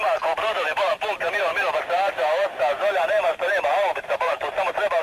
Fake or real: fake